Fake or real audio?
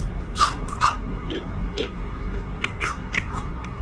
fake